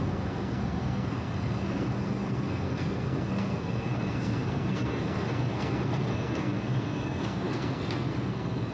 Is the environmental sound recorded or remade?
remade